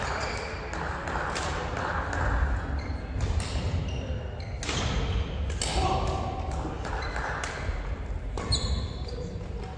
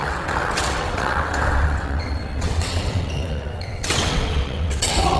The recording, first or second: first